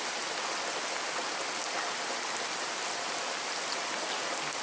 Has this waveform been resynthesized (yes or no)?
no